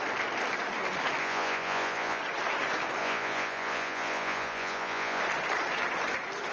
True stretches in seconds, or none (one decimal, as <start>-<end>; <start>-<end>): 0.0-1.2; 2.2-3.0; 5.2-6.5